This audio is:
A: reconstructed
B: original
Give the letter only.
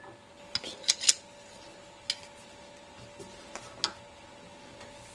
B